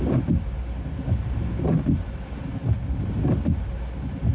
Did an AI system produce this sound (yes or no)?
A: no